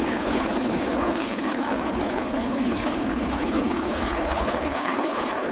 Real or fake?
fake